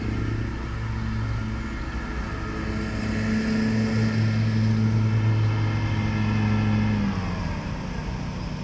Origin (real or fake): real